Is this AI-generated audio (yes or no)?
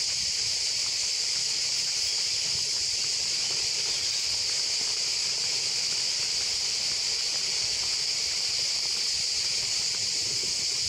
no